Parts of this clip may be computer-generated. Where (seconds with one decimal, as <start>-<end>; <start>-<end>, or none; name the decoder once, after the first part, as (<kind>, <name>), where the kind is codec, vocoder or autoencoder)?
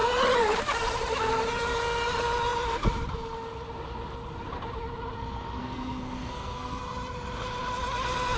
5.6-6.8 (codec, SNAC)